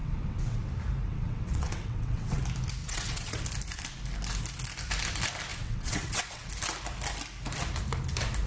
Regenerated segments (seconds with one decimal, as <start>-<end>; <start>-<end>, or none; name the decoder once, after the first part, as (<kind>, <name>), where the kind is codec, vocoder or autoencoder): 0.0-0.7 (vocoder, WaveNeXt); 1.1-2.4; 2.8-3.4; 5.5-6.5